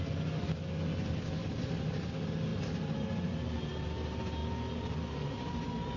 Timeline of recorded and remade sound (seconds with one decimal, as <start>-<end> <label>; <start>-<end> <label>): 0.0-1.4 recorded; 1.4-2.1 remade; 2.1-2.5 recorded; 2.5-3.3 remade; 3.3-6.0 recorded